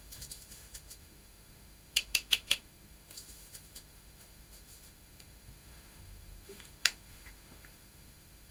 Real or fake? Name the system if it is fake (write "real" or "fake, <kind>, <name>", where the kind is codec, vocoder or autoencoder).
fake, autoencoder, DAC-VAE